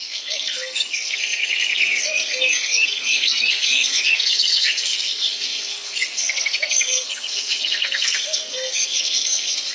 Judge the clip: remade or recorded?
remade